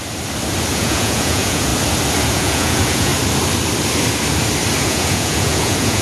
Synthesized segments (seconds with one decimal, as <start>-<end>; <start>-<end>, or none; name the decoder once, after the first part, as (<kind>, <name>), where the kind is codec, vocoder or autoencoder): 0.7-1.7 (vocoder, Vocos); 2.3-3.1; 4.8-6.0